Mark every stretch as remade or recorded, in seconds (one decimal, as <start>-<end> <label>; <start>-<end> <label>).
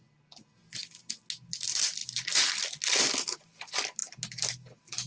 0.0-5.1 recorded